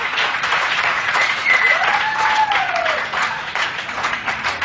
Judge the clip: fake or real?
fake